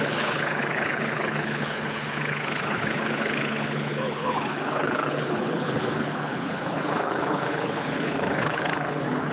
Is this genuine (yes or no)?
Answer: no